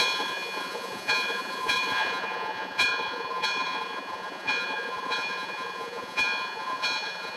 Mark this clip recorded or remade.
remade